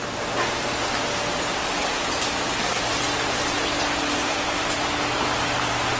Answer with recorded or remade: recorded